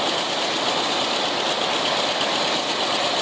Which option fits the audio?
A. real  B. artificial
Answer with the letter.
A